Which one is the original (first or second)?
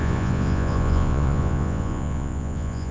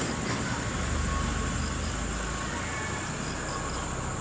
second